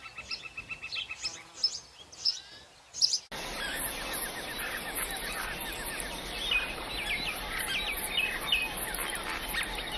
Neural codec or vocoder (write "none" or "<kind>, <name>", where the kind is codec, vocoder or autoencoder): none